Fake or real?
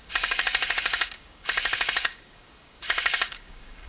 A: fake